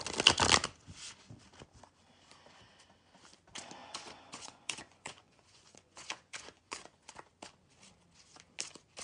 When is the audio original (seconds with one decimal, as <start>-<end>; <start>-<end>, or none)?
0.0-3.8; 7.1-9.0